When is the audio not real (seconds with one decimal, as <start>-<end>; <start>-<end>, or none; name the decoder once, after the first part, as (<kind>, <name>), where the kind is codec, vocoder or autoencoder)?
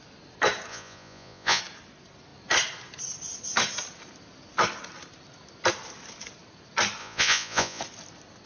0.7-1.6 (vocoder, Vocos); 7.0-7.8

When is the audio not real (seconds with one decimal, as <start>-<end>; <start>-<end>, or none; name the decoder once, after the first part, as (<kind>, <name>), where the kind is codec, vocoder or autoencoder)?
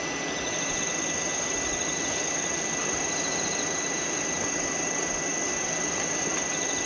1.3-2.3 (vocoder, BigVGAN v2); 2.8-6.2